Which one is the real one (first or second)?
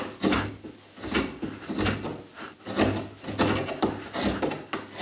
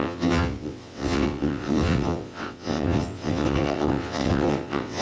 first